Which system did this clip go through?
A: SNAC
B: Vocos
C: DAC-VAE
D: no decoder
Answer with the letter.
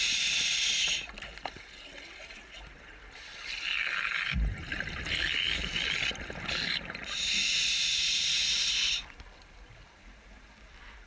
D